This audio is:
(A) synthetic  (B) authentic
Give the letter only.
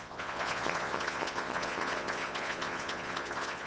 A